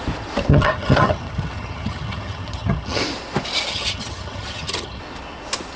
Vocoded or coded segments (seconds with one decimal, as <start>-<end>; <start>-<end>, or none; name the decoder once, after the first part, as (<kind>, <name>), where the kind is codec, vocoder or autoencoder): 0.5-3.0 (vocoder, HiFi-GAN); 3.7-5.0